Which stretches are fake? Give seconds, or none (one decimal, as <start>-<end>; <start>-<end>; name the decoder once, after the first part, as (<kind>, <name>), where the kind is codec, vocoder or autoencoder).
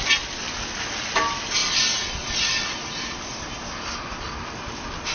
none